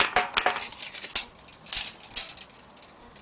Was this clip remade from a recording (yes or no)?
no